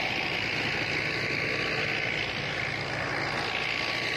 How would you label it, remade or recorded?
recorded